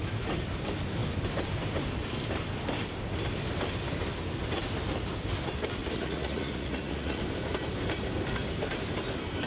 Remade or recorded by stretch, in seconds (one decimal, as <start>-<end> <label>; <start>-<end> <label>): 0.0-5.8 recorded; 5.8-7.2 remade; 7.2-9.5 recorded